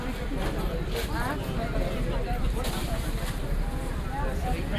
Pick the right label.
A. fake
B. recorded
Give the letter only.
B